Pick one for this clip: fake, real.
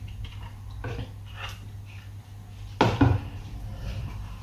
real